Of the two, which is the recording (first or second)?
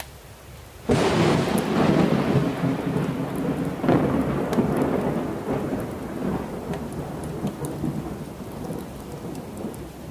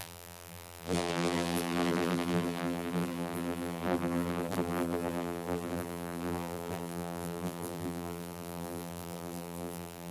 first